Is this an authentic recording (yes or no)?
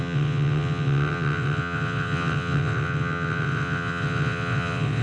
no